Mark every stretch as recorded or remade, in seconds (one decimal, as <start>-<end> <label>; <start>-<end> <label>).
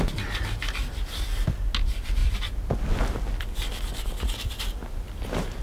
0.0-5.6 recorded